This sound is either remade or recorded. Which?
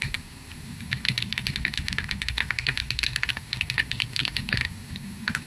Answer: remade